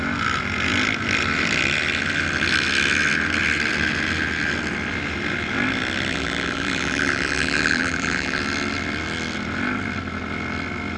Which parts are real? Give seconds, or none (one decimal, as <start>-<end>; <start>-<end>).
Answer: 0.0-6.1; 8.4-11.0